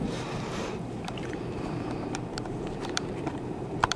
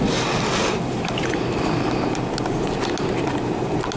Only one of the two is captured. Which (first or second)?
second